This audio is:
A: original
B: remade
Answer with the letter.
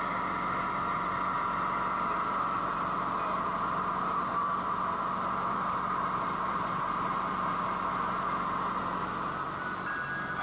A